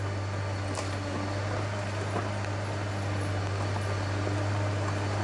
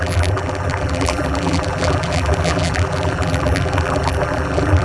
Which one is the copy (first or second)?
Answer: second